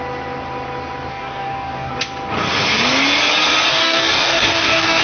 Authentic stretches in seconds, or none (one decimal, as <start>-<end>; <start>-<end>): 0.0-1.1; 1.9-3.7